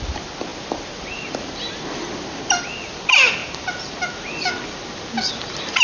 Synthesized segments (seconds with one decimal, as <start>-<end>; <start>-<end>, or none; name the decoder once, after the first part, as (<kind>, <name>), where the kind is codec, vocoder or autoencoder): 3.4-4.3 (vocoder, BigVGAN v2)